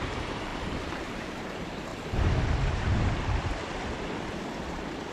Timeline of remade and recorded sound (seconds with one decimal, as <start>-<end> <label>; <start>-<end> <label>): 0.0-0.5 remade; 0.5-1.0 recorded; 1.0-1.9 remade; 1.9-5.1 recorded